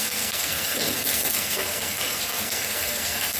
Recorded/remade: remade